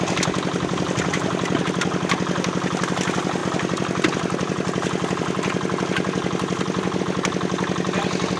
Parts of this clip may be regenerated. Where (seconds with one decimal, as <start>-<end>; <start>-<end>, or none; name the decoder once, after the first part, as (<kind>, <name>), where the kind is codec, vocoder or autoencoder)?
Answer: 3.4-7.0 (vocoder, BigVGAN v2)